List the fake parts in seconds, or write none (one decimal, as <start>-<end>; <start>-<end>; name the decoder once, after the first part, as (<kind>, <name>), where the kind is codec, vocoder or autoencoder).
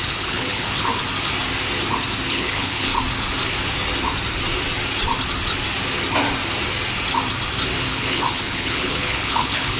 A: 0.0-0.9 (codec, HILCodec); 2.3-2.9; 7.9-9.8